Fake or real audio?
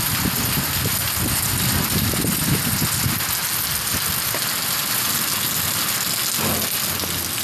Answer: real